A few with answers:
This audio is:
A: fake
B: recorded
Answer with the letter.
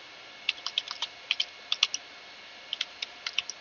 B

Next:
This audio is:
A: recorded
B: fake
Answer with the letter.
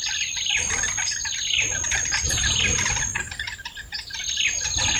A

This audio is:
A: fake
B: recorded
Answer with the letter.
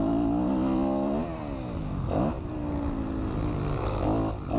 B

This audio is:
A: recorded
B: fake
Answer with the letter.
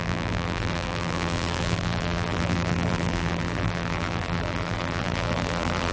B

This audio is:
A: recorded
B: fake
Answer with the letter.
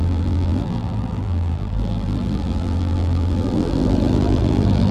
B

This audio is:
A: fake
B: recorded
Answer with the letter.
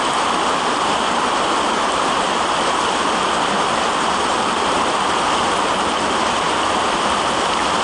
B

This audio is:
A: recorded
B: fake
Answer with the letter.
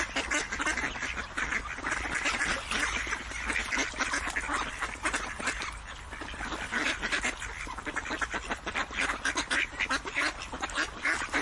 A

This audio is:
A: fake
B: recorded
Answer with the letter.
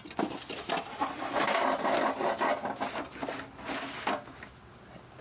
B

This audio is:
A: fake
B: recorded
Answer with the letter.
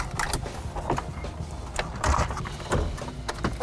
B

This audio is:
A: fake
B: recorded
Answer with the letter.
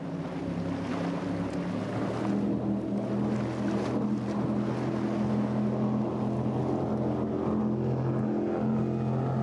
B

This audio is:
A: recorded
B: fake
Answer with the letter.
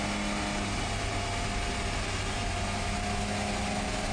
A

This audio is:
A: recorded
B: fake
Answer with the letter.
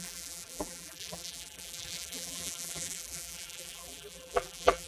B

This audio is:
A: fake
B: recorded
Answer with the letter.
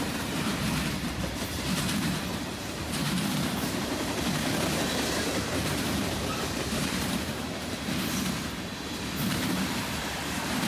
A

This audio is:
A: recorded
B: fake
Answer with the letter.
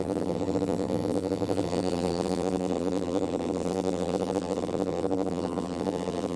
B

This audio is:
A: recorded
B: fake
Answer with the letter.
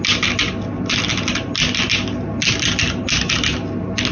A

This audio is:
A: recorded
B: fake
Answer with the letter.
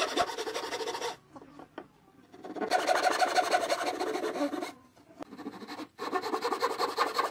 A